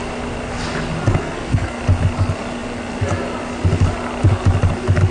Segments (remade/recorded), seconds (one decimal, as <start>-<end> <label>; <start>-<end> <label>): 0.0-1.1 recorded; 1.1-1.8 remade; 1.8-5.1 recorded